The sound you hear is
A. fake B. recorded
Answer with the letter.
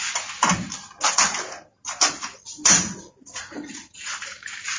B